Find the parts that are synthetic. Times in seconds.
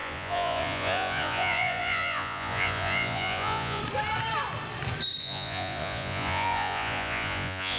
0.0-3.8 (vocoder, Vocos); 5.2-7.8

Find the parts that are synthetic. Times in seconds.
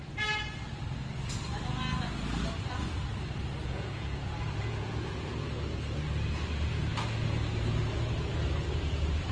3.6-5.5 (vocoder, Vocos)